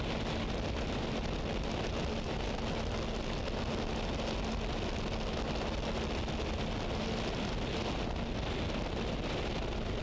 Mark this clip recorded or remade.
recorded